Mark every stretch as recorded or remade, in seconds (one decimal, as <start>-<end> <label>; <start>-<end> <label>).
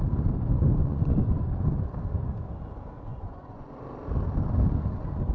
0.0-0.8 recorded; 0.8-1.5 remade; 1.5-3.1 recorded; 3.1-3.7 remade; 3.7-5.3 recorded